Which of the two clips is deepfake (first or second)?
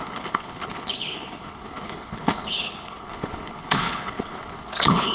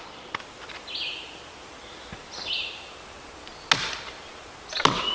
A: first